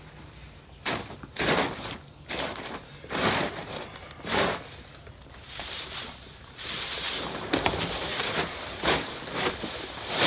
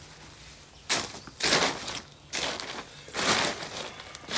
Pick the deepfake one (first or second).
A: first